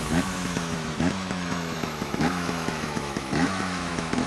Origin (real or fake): fake